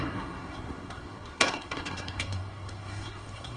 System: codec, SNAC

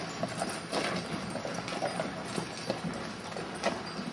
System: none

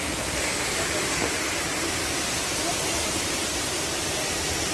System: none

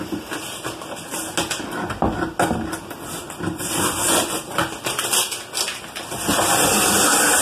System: none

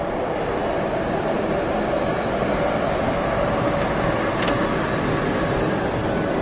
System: none